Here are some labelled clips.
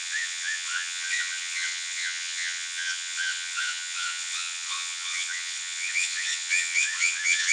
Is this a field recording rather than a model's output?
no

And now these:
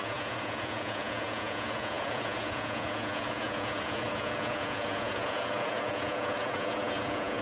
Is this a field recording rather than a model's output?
no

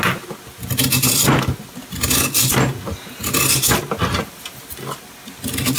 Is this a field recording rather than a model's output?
yes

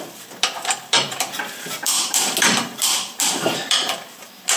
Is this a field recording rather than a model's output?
no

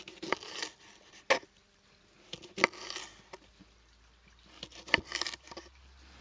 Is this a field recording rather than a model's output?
yes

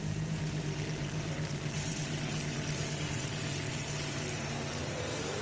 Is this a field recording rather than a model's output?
no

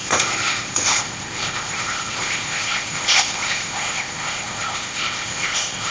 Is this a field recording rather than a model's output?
no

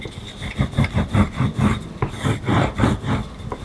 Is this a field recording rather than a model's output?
yes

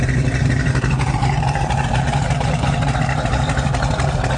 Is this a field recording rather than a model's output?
no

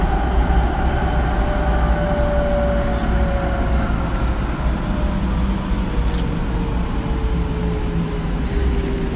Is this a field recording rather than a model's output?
yes